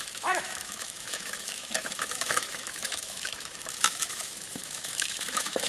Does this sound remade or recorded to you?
remade